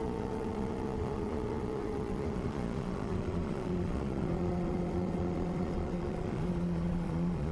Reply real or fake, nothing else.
fake